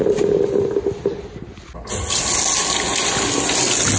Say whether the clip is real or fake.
real